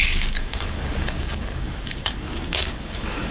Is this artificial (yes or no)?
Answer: yes